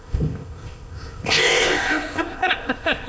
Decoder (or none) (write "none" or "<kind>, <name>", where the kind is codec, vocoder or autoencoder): codec, ZipCodec